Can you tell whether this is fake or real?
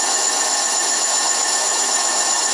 fake